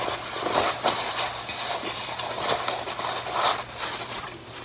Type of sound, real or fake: real